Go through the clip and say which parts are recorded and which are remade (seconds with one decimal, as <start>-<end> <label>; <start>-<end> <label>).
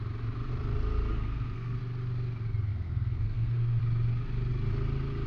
0.0-1.1 recorded; 1.1-1.8 remade; 1.8-2.7 recorded; 2.7-3.8 remade; 3.8-5.3 recorded